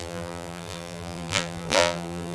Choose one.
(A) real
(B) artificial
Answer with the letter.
B